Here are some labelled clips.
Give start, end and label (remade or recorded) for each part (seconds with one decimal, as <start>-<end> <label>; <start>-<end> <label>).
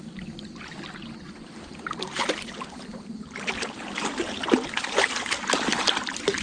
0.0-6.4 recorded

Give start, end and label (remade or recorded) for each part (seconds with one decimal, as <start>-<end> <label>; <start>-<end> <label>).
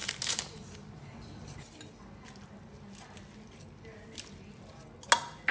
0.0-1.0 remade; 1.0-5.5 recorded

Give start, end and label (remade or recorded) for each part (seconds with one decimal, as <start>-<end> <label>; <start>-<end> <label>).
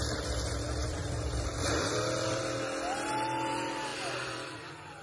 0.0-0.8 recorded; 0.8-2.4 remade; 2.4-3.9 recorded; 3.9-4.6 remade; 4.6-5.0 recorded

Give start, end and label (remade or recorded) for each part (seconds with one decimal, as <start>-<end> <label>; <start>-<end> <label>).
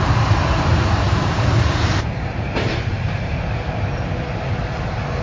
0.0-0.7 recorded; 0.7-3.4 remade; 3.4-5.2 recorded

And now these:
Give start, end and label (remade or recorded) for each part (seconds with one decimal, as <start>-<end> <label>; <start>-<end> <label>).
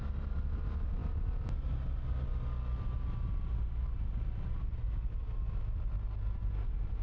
0.0-7.0 recorded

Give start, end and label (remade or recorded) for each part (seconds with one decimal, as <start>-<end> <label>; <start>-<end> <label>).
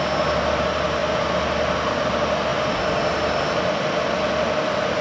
0.0-5.0 recorded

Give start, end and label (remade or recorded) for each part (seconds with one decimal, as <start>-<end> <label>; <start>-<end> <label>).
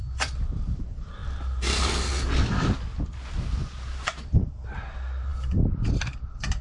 0.0-1.2 recorded; 1.2-1.8 remade; 1.8-6.6 recorded